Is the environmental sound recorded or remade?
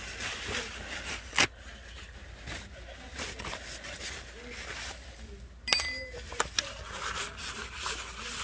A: recorded